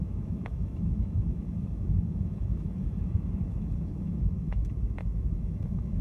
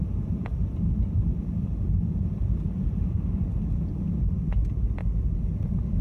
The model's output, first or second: first